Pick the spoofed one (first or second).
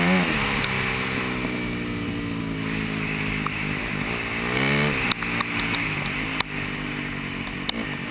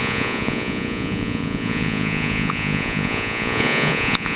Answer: second